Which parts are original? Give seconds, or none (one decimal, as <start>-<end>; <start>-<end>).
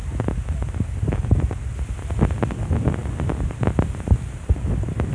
1.1-3.0; 4.6-5.1